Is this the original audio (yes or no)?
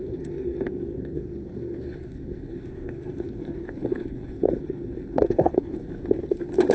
no